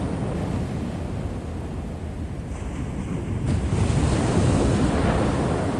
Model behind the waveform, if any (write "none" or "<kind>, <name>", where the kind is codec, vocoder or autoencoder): none